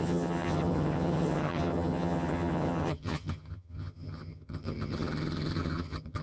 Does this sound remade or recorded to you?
remade